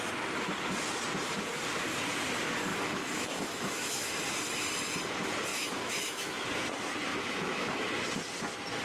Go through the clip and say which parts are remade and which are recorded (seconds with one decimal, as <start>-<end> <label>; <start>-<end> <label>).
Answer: 0.0-2.7 recorded; 2.7-4.1 remade; 4.1-5.5 recorded; 5.5-6.5 remade; 6.5-7.1 recorded; 7.1-7.9 remade; 7.9-8.8 recorded